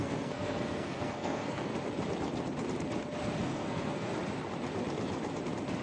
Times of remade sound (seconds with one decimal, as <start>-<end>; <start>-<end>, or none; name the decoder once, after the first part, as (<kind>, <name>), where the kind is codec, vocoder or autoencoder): 0.0-1.7 (codec, SNAC); 3.4-4.1